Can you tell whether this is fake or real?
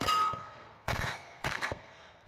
fake